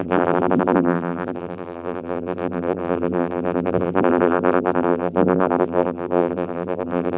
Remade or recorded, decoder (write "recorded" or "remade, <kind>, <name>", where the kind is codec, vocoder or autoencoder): remade, vocoder, BigVGAN v2